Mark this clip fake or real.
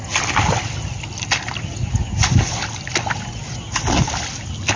real